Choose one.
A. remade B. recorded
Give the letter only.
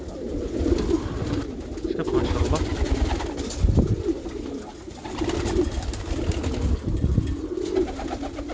B